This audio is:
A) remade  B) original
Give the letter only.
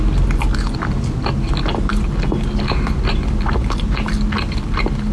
B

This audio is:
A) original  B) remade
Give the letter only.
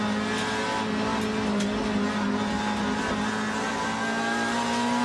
A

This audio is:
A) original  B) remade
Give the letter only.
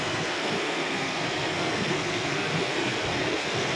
B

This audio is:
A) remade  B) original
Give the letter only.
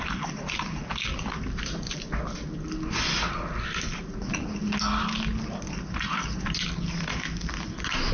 B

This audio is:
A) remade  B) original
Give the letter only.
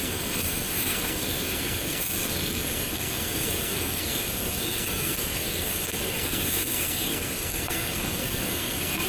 A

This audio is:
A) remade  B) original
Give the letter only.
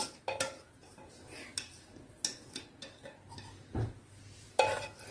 B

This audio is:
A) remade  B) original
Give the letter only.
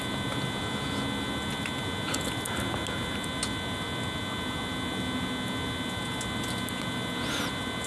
B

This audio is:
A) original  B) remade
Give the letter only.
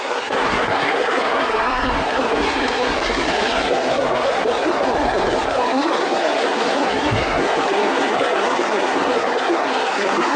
B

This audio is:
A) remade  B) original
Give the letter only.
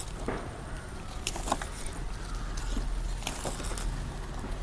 B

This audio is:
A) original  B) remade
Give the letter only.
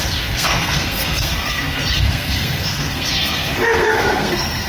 B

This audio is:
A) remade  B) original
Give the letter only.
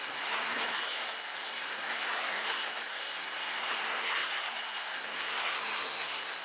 A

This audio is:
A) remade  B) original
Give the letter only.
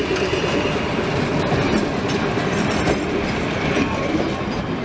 B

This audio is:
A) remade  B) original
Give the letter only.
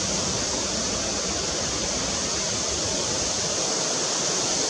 B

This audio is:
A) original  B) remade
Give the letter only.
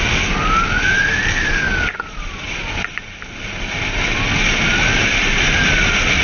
A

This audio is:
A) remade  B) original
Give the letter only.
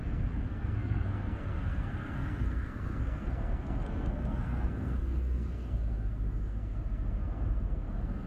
A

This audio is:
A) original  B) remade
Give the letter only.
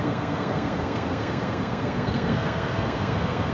B